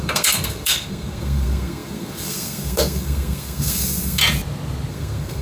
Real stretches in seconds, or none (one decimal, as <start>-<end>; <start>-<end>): 4.2-4.9